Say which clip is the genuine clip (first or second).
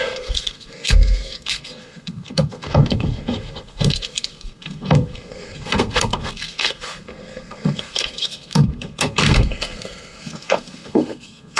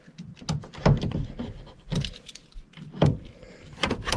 second